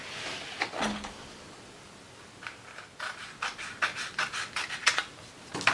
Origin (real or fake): real